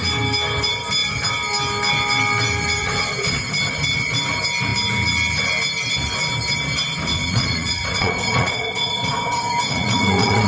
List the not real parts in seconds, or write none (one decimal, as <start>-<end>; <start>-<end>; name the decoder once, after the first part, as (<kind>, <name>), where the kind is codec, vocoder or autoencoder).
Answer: 2.8-3.4 (vocoder, Vocos); 7.1-10.5